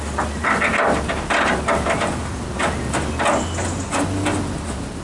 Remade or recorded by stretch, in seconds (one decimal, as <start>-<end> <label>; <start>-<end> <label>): 0.0-5.0 recorded

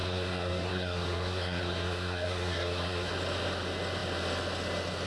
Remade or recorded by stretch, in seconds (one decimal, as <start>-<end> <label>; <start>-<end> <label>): 0.0-3.1 remade; 3.1-5.1 recorded

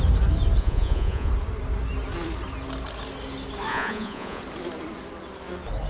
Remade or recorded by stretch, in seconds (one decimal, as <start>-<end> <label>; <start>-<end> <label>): 0.0-0.6 recorded; 0.6-1.3 remade; 1.3-3.7 recorded; 3.7-4.4 remade; 4.4-5.9 recorded

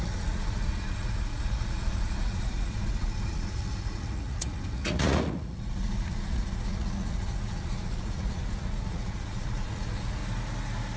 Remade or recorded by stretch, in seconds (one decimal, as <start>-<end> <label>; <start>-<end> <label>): 0.0-10.2 remade; 10.2-11.0 recorded

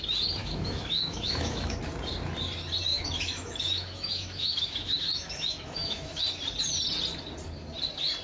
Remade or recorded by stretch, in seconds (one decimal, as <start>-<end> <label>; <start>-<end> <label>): 0.0-0.4 recorded; 0.4-1.8 remade; 1.8-2.9 recorded; 2.9-6.2 remade; 6.2-8.2 recorded

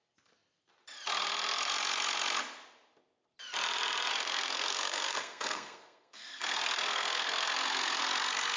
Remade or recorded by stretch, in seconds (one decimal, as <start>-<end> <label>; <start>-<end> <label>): 0.0-4.1 recorded; 4.1-8.0 remade; 8.0-8.6 recorded

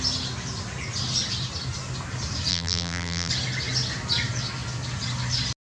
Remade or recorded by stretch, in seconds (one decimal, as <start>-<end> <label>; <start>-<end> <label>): 0.0-2.5 recorded; 2.5-3.3 remade; 3.3-5.7 recorded

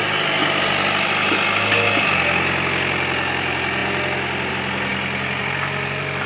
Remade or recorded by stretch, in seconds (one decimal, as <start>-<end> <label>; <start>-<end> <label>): 0.0-6.3 recorded